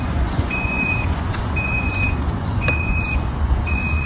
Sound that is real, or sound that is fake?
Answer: fake